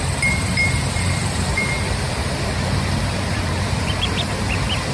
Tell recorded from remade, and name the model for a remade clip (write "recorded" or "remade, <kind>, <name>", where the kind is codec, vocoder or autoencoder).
remade, vocoder, BigVGAN v2